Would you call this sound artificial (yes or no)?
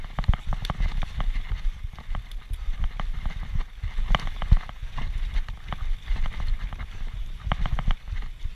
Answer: no